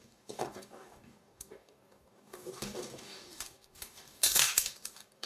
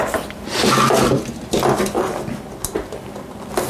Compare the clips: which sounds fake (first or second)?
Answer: first